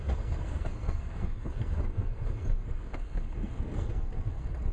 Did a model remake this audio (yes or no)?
yes